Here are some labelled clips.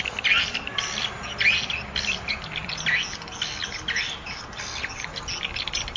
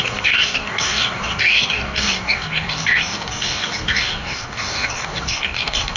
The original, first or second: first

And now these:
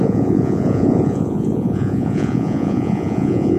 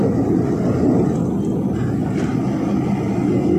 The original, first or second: second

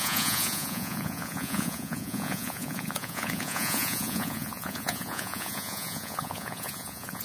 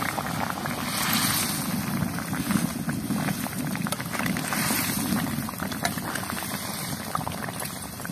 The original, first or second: second